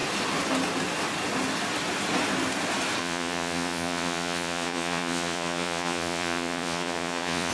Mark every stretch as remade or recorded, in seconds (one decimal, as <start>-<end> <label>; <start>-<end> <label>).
0.0-3.0 recorded; 3.0-7.5 remade